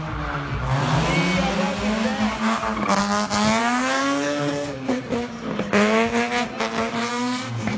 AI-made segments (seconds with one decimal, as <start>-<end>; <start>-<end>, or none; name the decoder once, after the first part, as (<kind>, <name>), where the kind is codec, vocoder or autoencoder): 3.6-5.0 (codec, SNAC); 7.1-7.8